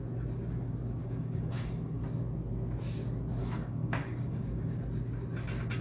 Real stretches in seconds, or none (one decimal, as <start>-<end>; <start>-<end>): 0.0-1.0; 2.0-3.4; 4.8-5.8